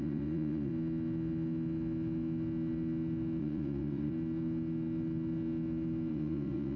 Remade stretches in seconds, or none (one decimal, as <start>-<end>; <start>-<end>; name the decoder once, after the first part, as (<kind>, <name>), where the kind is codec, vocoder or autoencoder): 0.0-0.7 (vocoder, Vocos); 3.4-4.1; 6.1-6.8